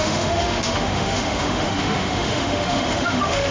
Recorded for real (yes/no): no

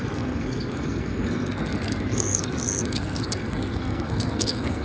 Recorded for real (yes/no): no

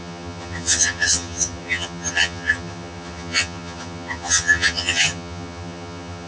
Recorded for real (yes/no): no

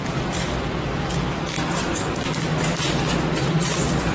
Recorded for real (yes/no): yes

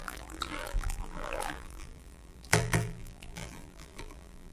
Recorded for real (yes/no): no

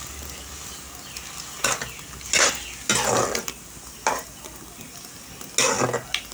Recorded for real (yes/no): yes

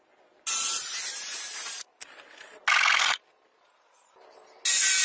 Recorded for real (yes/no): yes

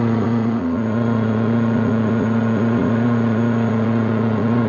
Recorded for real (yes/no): no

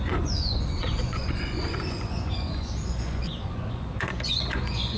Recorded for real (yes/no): no